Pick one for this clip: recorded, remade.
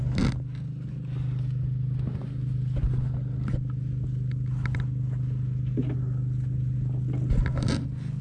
recorded